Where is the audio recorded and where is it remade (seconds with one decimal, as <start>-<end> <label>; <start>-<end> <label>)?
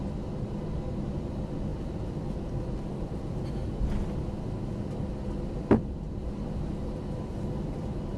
0.0-8.2 recorded